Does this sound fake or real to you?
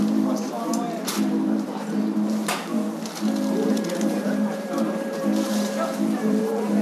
fake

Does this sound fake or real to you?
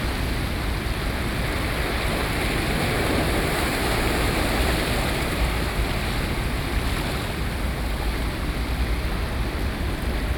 real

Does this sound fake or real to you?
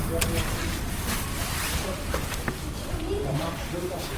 fake